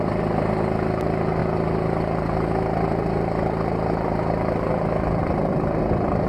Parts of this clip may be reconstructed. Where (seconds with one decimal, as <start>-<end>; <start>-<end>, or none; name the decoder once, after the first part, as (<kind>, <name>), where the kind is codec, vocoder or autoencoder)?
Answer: none